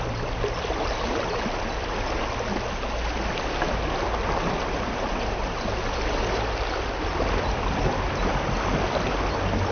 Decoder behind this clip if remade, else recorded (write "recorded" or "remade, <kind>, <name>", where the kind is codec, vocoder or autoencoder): recorded